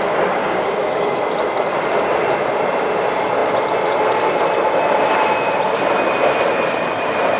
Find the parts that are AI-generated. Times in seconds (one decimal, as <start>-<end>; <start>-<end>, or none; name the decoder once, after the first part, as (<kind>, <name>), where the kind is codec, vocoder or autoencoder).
0.4-1.2 (codec, DAC)